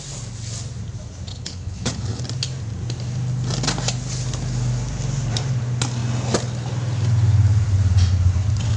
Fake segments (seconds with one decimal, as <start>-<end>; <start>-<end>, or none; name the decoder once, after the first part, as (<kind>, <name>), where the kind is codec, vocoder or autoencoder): 1.3-2.2 (codec, HILCodec)